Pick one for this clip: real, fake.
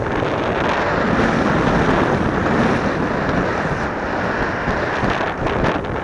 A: real